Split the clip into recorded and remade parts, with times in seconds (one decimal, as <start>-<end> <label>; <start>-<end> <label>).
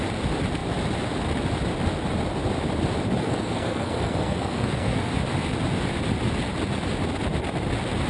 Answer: 0.0-3.2 recorded; 3.2-5.1 remade; 5.1-8.1 recorded